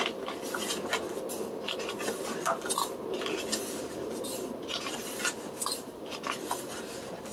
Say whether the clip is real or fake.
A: real